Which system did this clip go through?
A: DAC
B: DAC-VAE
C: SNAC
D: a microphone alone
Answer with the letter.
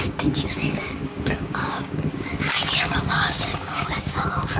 A